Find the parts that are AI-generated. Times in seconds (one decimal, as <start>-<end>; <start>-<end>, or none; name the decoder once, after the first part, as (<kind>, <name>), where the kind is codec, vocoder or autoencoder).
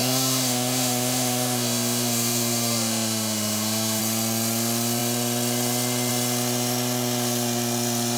0.0-4.0 (autoencoder, DAC-VAE)